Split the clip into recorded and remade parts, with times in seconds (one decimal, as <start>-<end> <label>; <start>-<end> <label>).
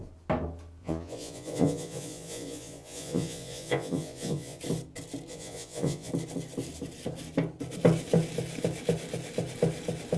0.0-0.8 recorded; 0.8-4.6 remade; 4.6-5.3 recorded; 5.3-6.1 remade; 6.1-10.2 recorded